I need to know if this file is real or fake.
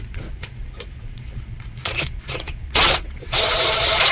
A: fake